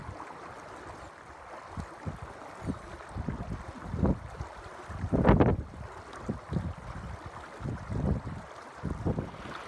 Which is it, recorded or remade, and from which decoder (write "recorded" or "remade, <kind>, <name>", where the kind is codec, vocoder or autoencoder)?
recorded